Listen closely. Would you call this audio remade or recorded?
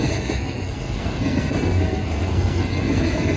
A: remade